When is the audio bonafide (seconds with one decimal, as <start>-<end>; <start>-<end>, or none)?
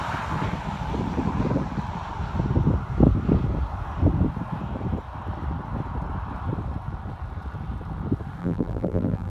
0.0-8.4